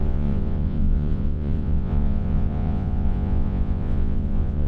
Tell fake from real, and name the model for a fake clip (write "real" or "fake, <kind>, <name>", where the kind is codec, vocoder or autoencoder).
fake, vocoder, Vocos